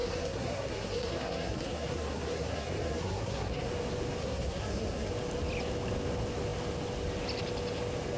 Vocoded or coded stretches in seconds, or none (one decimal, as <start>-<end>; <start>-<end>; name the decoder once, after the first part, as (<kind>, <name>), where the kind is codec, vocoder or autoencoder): 0.0-3.7 (codec, SNAC); 4.2-5.1